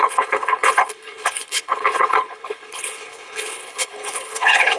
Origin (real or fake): fake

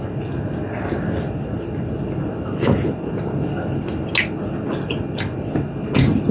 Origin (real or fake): real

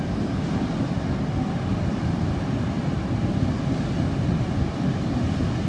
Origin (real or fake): real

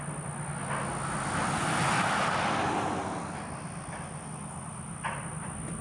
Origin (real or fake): real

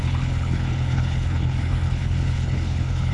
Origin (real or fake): fake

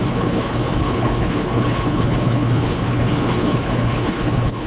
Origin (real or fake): fake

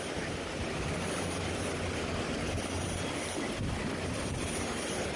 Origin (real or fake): real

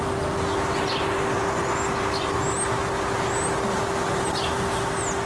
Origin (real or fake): real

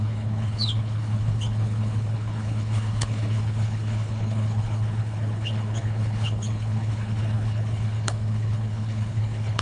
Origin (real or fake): fake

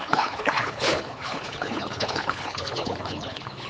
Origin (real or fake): fake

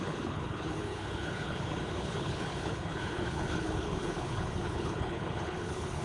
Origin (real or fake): fake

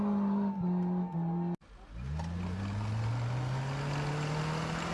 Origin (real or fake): real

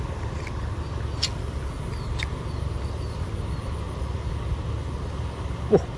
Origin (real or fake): real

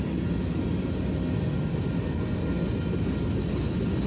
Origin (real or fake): real